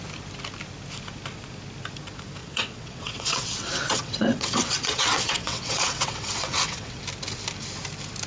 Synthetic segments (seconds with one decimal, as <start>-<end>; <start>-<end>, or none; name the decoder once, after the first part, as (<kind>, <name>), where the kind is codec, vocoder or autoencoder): 2.4-7.0 (vocoder, WaveNeXt)